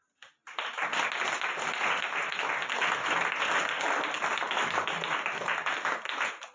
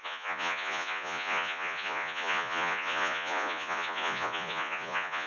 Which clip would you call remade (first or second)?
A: second